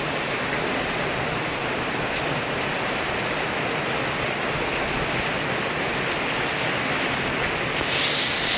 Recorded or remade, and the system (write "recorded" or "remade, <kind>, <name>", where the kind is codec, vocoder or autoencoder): recorded